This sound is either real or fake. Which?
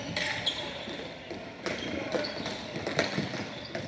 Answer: real